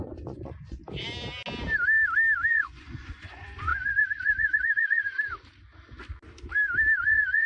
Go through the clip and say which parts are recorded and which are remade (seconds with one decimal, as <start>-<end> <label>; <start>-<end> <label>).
0.0-0.8 remade; 0.8-2.5 recorded; 2.5-5.1 remade; 5.1-7.0 recorded; 7.0-7.5 remade